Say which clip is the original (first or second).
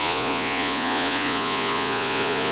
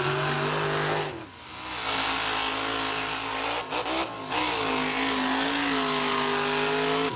second